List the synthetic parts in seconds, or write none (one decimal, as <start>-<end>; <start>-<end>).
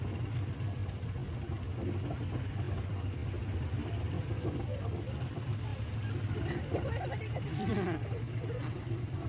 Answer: 0.0-1.2; 2.5-3.2; 4.3-7.7; 8.2-9.3